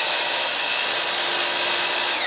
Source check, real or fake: real